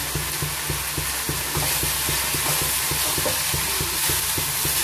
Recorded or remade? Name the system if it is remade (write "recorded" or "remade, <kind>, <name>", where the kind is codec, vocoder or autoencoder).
recorded